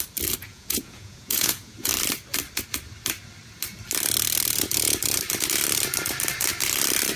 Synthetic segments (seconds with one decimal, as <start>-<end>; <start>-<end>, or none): 0.4-1.9